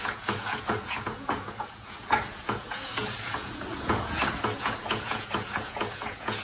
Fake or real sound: fake